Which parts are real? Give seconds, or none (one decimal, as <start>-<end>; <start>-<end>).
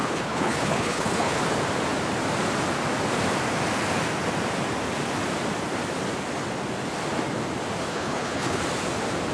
1.4-7.9; 8.6-9.3